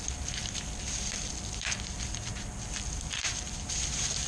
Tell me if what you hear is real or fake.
fake